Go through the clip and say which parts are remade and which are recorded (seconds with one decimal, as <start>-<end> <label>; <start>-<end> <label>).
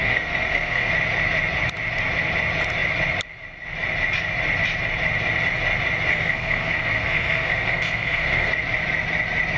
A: 0.0-0.9 remade; 0.9-6.1 recorded; 6.1-8.5 remade; 8.5-9.6 recorded